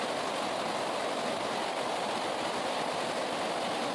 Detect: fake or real real